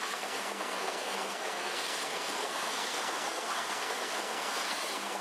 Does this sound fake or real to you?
fake